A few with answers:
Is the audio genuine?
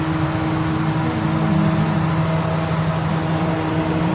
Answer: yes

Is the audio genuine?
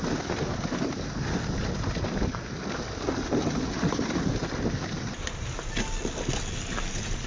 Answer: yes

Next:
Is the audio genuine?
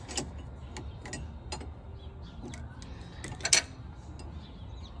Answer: yes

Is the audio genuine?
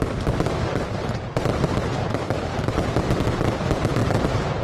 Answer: no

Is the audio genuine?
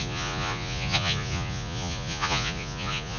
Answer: no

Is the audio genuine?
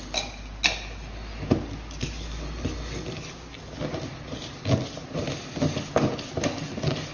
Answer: yes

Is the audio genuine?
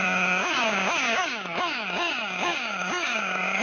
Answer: no